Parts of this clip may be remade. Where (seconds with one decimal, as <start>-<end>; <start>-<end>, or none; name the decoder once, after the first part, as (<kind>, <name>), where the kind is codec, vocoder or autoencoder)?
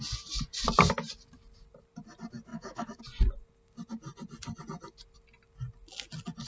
2.5-3.0 (autoencoder, DAC-VAE)